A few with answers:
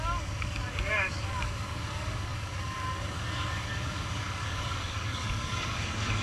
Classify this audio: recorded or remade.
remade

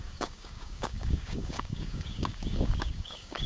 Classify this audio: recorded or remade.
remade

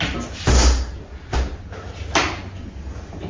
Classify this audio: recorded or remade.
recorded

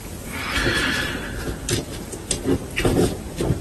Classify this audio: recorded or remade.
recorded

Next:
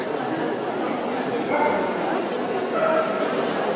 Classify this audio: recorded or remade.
recorded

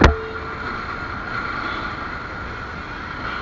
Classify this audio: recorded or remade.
recorded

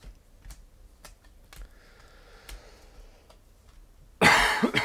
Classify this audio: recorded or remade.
recorded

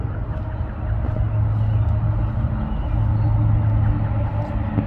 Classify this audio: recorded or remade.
recorded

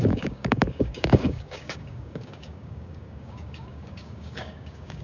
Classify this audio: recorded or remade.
remade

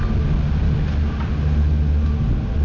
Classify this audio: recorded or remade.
recorded